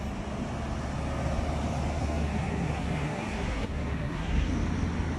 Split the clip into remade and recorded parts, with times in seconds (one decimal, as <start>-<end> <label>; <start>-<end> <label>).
0.0-1.9 recorded; 1.9-4.5 remade; 4.5-5.2 recorded